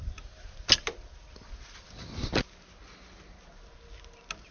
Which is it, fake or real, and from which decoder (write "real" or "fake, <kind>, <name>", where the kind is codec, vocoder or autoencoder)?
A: real